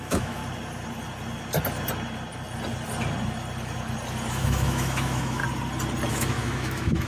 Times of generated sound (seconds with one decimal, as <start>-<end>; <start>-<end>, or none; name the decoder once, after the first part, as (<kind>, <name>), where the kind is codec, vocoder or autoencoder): 0.0-0.4 (autoencoder, DAC-VAE); 4.3-5.4; 6.1-7.1